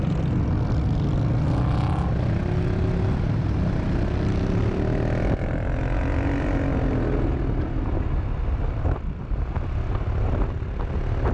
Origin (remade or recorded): recorded